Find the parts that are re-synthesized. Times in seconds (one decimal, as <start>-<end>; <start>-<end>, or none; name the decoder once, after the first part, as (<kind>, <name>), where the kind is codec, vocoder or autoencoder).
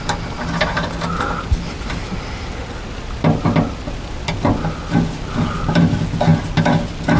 none